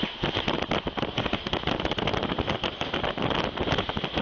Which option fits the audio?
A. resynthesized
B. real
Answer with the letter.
B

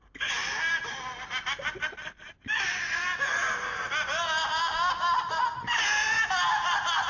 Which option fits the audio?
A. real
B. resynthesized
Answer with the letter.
A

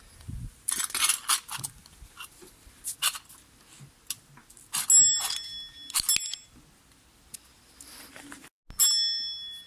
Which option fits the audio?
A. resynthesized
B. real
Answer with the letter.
B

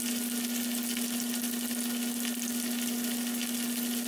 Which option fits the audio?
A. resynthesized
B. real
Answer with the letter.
B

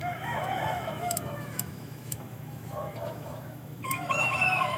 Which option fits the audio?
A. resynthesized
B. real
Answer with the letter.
A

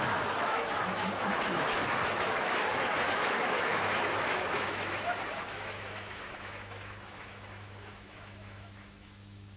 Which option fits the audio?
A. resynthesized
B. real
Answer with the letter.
A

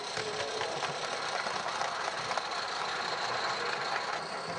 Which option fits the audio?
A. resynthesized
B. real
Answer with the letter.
A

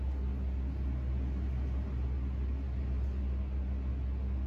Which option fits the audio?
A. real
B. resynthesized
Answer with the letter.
A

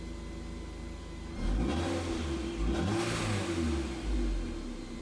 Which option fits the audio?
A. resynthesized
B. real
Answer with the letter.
B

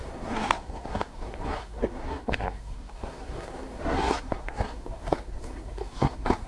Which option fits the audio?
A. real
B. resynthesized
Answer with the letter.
B